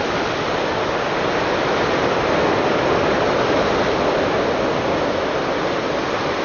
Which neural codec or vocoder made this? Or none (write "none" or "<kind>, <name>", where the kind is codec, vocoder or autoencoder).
none